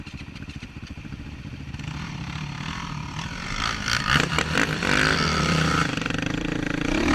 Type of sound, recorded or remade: remade